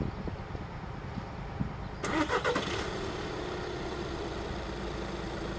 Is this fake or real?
real